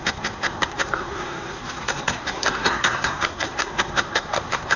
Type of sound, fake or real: fake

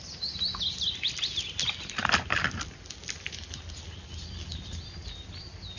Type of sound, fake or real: real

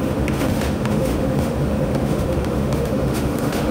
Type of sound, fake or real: fake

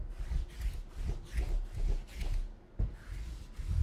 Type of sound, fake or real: real